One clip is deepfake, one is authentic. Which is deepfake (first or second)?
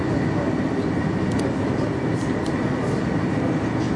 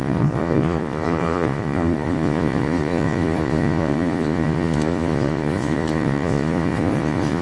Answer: second